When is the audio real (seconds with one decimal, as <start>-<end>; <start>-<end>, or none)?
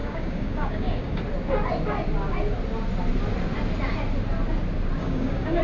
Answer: 1.2-5.0